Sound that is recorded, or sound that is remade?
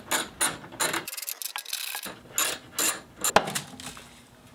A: recorded